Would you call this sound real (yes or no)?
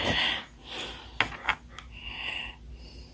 yes